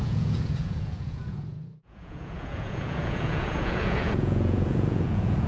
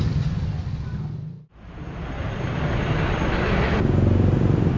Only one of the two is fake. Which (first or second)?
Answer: first